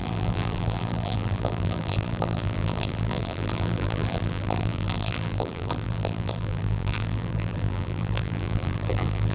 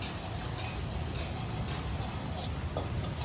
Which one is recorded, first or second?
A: second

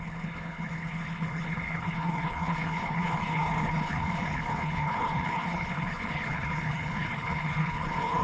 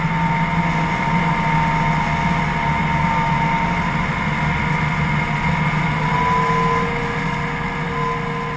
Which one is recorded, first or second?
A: second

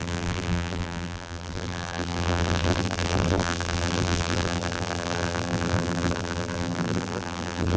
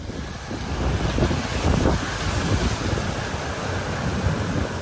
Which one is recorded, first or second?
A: second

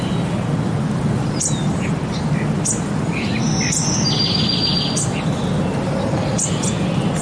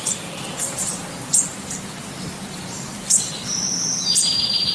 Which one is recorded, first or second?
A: first